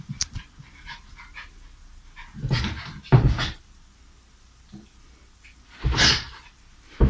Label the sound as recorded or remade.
recorded